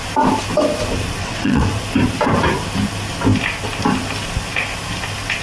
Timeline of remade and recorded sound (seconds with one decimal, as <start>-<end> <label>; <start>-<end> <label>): 0.0-1.2 recorded; 1.2-1.7 remade; 1.7-5.4 recorded

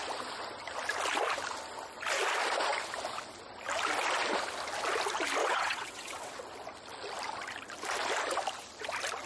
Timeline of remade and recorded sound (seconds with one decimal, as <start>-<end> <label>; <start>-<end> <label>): 0.0-5.4 recorded; 5.4-6.4 remade; 6.4-9.3 recorded

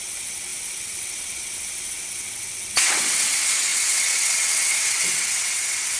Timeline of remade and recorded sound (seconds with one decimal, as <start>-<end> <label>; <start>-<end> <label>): 0.0-6.0 remade

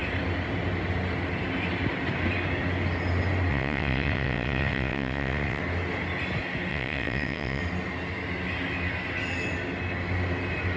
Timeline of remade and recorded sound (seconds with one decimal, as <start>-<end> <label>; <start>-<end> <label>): 0.0-3.5 recorded; 3.5-5.6 remade; 5.6-6.7 recorded; 6.7-7.6 remade; 7.6-10.8 recorded